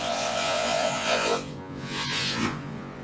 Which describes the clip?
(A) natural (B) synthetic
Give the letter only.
B